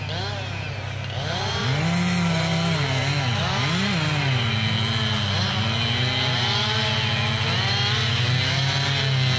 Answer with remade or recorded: recorded